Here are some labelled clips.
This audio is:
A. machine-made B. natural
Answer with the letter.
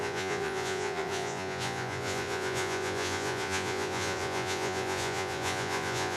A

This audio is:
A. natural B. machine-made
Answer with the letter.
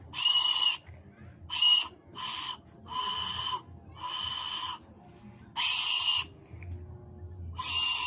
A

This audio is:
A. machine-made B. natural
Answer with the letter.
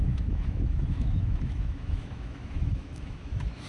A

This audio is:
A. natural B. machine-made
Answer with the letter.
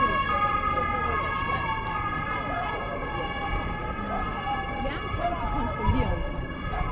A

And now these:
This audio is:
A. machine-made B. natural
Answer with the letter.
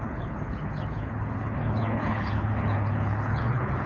A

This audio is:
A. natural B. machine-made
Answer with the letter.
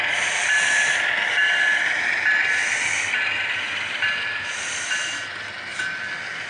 A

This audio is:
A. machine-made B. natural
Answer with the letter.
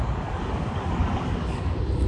A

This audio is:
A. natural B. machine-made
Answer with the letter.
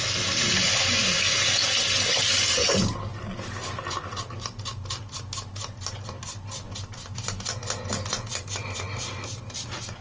A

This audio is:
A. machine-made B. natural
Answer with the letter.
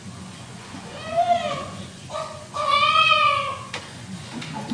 A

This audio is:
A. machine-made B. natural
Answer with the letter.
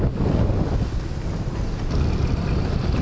B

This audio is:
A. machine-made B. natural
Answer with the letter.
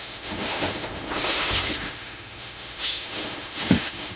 A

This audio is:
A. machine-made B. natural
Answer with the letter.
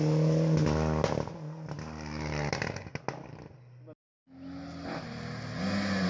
B